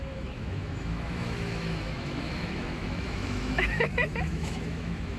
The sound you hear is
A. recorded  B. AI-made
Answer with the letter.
B